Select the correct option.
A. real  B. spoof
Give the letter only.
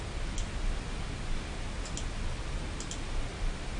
A